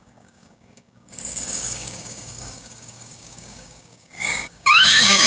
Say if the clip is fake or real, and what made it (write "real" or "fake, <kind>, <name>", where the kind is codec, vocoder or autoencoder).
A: fake, codec, DAC